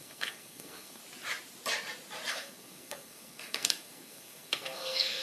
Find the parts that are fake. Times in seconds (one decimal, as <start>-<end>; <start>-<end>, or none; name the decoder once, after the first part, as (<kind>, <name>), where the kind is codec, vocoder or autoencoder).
0.0-1.0 (codec, SNAC); 2.3-5.2